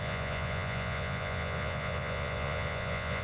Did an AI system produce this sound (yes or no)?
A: yes